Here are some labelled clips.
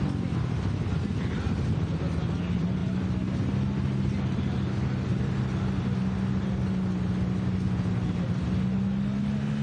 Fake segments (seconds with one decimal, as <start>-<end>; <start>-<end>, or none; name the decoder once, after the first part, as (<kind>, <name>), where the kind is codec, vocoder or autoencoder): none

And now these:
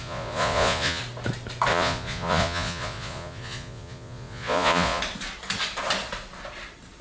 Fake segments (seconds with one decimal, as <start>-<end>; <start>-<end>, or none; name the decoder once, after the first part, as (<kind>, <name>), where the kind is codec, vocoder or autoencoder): 0.0-1.0 (vocoder, Vocos); 1.7-5.0

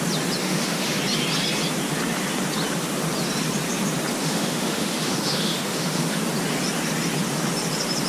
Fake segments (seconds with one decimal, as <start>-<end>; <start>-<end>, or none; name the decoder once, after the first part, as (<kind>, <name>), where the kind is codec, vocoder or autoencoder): 0.4-1.0 (autoencoder, DAC-VAE); 4.2-6.2

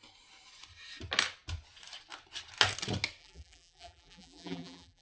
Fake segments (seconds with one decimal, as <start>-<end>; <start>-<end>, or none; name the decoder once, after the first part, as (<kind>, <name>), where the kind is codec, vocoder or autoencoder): 3.2-5.0 (vocoder, BigVGAN v2)